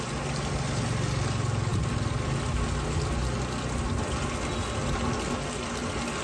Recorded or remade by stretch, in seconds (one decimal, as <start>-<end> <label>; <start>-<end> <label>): 0.0-6.2 recorded